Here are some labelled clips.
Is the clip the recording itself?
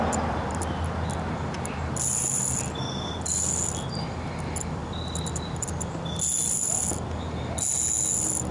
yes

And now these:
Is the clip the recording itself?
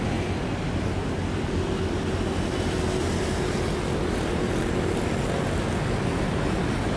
yes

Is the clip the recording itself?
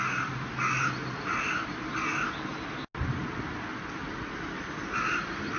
yes